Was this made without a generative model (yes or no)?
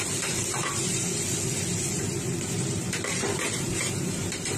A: yes